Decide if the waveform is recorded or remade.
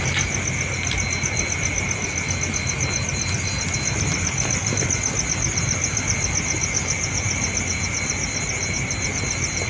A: recorded